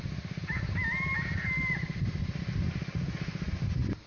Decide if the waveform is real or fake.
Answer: real